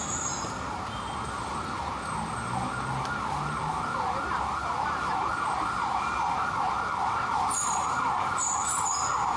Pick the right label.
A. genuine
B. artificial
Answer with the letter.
A